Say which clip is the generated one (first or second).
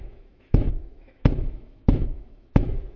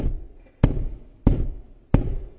first